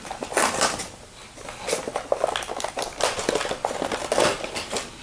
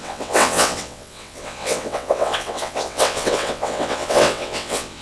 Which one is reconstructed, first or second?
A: second